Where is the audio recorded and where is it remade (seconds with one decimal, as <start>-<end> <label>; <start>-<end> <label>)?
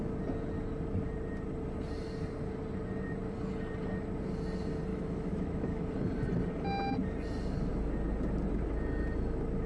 0.0-4.9 recorded; 4.9-5.9 remade; 5.9-9.7 recorded